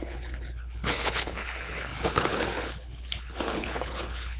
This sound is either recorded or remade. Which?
remade